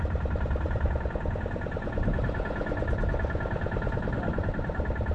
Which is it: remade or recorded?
recorded